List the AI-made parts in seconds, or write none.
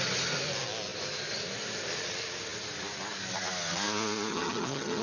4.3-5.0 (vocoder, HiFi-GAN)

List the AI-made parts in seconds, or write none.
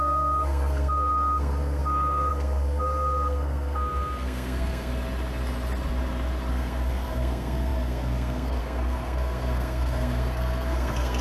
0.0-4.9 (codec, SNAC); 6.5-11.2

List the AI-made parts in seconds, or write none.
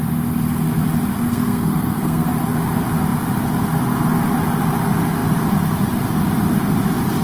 1.3-2.3 (codec, SNAC)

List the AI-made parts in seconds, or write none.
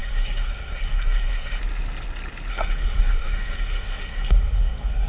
0.0-1.6 (codec, SNAC); 2.5-5.1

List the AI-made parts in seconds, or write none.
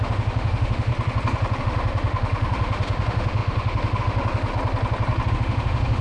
0.0-0.9 (autoencoder, DAC-VAE); 1.6-4.5; 5.3-6.0